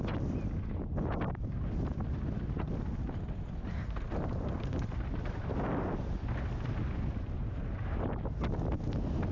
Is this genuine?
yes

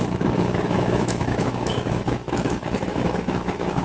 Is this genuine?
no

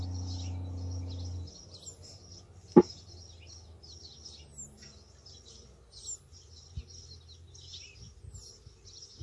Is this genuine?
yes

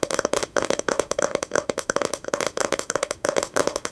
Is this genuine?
no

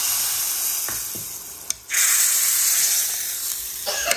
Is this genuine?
yes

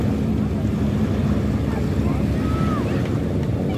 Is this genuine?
yes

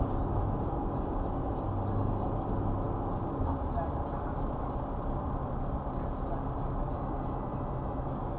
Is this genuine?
yes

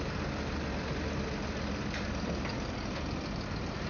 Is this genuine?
yes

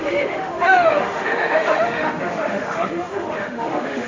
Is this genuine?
no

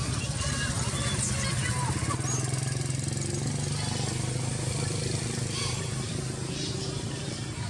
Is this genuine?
yes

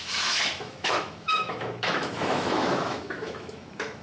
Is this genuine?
no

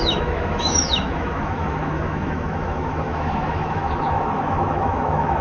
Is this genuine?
no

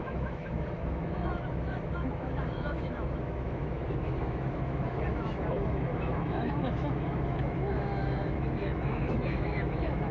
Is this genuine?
no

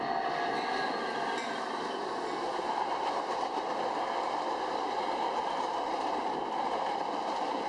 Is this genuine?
yes